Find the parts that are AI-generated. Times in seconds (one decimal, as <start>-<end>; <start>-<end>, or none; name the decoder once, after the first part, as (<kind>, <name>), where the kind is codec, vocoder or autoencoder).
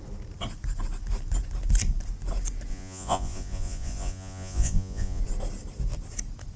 2.7-5.2 (vocoder, Vocos)